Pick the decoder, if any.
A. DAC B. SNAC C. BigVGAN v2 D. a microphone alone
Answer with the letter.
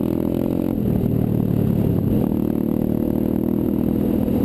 D